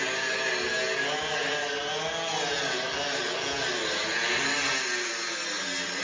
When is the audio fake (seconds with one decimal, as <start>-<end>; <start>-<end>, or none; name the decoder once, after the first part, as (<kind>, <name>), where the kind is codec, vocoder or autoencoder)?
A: none